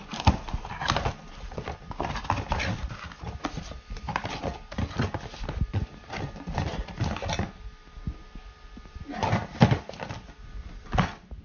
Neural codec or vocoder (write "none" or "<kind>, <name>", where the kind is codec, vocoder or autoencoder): none